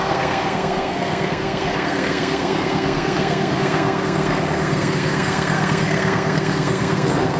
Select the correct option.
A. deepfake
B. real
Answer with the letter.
A